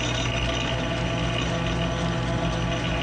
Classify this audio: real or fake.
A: real